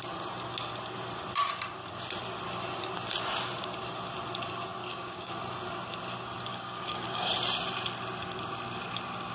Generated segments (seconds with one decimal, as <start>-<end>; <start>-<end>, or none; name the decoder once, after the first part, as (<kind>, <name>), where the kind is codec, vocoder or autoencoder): 4.8-5.3 (codec, DAC); 6.5-7.3